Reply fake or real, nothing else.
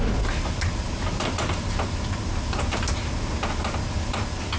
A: real